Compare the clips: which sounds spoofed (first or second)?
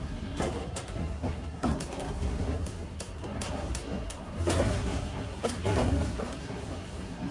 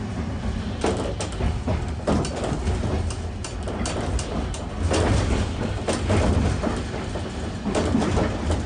first